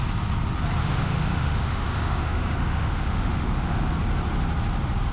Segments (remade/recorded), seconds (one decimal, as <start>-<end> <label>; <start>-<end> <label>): 0.0-0.8 recorded; 0.8-3.9 remade; 3.9-5.1 recorded

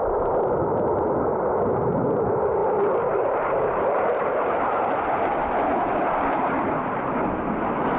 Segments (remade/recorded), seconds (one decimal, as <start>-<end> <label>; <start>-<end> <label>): 0.0-2.6 recorded; 2.6-4.8 remade; 4.8-8.0 recorded

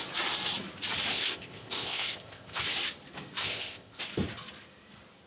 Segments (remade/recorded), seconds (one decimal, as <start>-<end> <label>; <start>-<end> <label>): 0.0-1.1 recorded; 1.1-2.6 remade; 2.6-3.4 recorded; 3.4-4.0 remade; 4.0-5.3 recorded

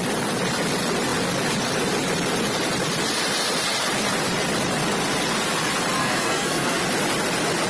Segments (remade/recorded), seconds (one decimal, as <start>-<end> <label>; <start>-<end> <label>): 0.0-6.0 recorded; 6.0-6.8 remade; 6.8-7.7 recorded

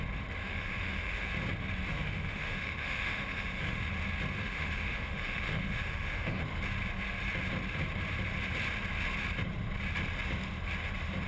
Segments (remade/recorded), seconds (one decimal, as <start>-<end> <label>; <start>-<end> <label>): 0.0-0.4 recorded; 0.4-1.3 remade; 1.3-1.9 recorded; 1.9-3.9 remade; 3.9-4.4 recorded; 4.4-6.4 remade; 6.4-11.3 recorded

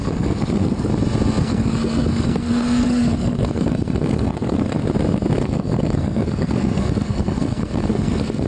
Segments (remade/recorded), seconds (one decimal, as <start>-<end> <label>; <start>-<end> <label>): 0.0-0.9 remade; 0.9-1.4 recorded; 1.4-4.8 remade; 4.8-5.4 recorded; 5.4-8.5 remade

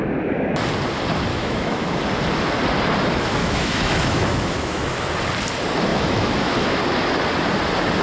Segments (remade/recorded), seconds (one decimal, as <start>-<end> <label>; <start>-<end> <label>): 0.0-1.3 recorded; 1.3-2.0 remade; 2.0-3.4 recorded; 3.4-5.1 remade; 5.1-5.9 recorded; 5.9-6.8 remade; 6.8-8.0 recorded